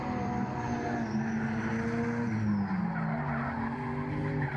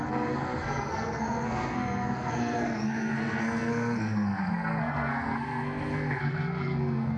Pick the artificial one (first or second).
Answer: second